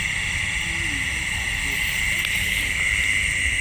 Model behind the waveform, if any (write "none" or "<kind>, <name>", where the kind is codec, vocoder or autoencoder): none